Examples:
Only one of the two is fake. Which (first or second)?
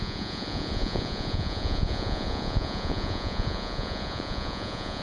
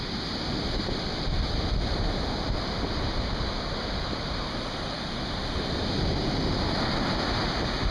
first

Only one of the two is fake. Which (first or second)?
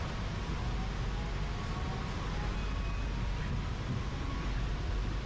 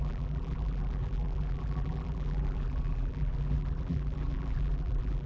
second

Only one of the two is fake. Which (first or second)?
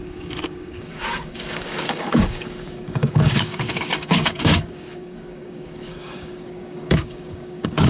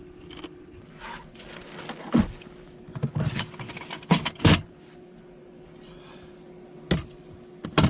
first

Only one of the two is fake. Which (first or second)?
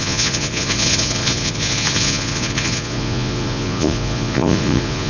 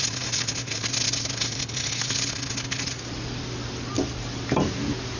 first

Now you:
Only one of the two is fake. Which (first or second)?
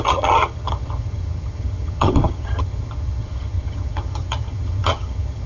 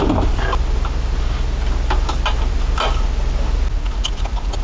first